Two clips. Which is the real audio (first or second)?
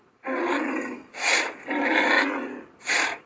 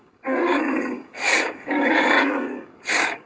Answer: first